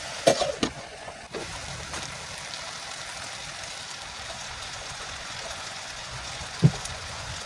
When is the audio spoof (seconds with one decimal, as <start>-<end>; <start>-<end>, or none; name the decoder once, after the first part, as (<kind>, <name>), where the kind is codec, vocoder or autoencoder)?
0.0-1.6 (vocoder, Vocos); 4.3-7.5